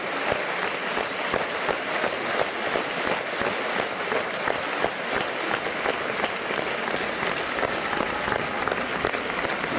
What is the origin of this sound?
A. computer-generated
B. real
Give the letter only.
B